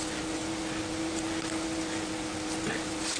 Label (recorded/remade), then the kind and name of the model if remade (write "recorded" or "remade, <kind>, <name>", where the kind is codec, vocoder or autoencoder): recorded